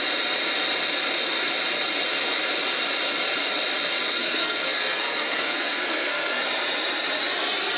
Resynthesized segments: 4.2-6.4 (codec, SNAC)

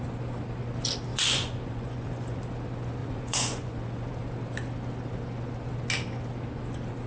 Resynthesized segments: 1.1-2.4 (vocoder, Vocos); 3.0-4.1

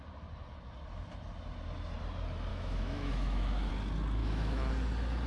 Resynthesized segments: 2.5-3.7 (autoencoder, DAC-VAE); 4.2-4.7

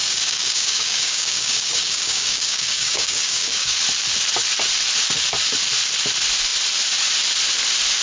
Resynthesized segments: 0.0-3.8 (codec, DAC)

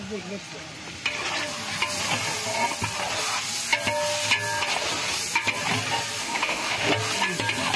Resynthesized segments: 6.2-6.9 (autoencoder, DAC-VAE)

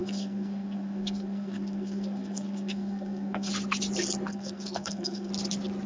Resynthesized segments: 0.0-3.5 (codec, SNAC); 4.3-5.3